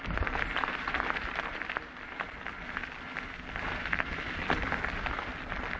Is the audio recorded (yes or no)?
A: yes